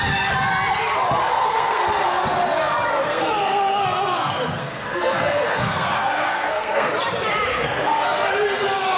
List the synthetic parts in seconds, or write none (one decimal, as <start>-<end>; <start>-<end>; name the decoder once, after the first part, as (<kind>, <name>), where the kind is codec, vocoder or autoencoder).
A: 1.3-1.8 (codec, SNAC); 3.0-6.9; 7.5-8.3